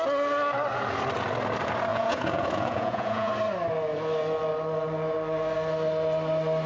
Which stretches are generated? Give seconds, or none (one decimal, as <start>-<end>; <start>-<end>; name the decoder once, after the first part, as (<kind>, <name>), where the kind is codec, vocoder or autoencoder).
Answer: 1.9-3.3 (vocoder, Vocos)